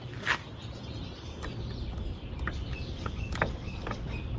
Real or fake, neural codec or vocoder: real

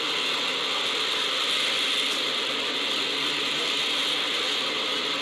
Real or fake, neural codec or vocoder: real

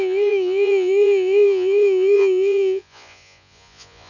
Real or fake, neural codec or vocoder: fake, vocoder, Vocos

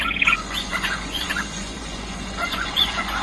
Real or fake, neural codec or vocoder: fake, vocoder, Vocos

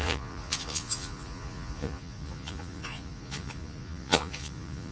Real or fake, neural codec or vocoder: fake, vocoder, Vocos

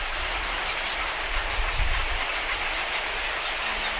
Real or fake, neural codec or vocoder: real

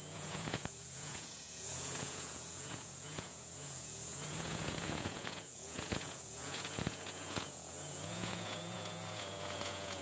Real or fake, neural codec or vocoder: fake, vocoder, Vocos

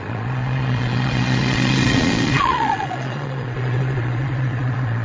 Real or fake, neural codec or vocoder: fake, vocoder, Vocos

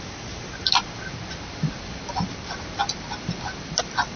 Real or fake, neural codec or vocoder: real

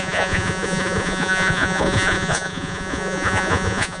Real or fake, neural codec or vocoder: fake, vocoder, Vocos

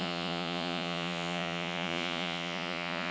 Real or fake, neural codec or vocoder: fake, vocoder, Vocos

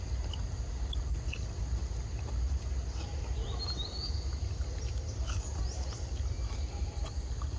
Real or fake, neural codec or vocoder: real